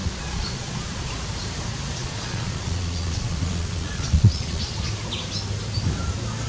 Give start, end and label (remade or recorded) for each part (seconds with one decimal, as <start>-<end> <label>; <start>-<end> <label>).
0.0-1.1 remade; 1.1-2.0 recorded; 2.0-4.8 remade; 4.8-6.5 recorded